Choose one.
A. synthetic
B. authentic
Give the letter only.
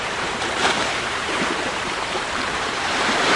A